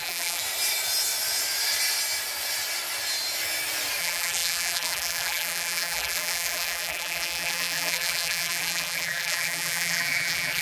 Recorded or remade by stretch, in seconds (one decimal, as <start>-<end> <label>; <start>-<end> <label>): 0.0-0.4 remade; 0.4-4.0 recorded; 4.0-10.6 remade